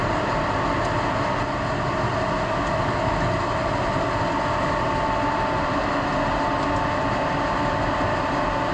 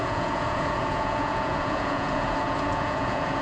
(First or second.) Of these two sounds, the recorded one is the first